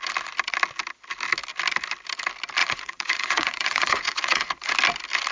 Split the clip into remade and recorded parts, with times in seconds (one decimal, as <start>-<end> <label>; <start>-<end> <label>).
0.0-2.6 recorded; 2.6-4.7 remade; 4.7-5.3 recorded